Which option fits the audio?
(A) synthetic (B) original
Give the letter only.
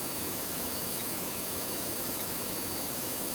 A